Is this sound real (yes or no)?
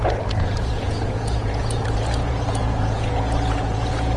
no